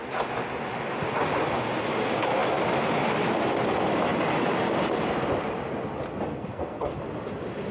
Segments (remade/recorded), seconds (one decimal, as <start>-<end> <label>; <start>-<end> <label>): 0.0-6.3 recorded; 6.3-7.0 remade; 7.0-7.7 recorded